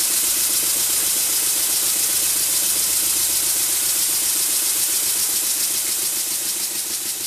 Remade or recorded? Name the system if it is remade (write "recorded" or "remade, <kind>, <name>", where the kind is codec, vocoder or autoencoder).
recorded